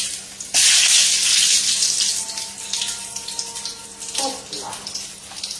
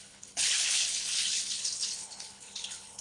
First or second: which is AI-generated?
second